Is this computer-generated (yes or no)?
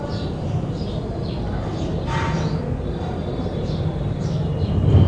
yes